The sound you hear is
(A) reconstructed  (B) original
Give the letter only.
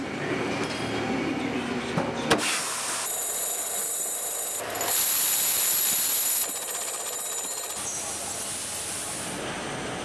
B